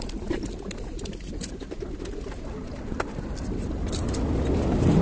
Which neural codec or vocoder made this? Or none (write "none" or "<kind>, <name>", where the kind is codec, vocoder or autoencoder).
none